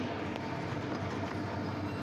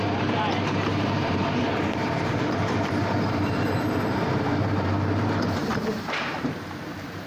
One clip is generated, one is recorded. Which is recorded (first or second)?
first